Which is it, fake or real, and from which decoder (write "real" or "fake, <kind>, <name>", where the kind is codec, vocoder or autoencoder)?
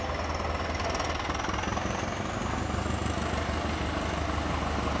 real